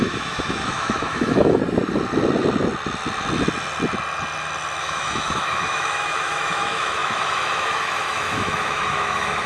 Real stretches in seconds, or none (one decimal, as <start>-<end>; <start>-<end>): 1.6-4.8